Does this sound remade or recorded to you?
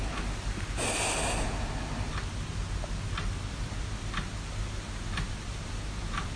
recorded